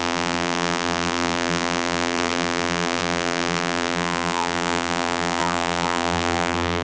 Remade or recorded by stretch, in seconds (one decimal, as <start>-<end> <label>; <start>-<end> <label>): 0.0-6.8 remade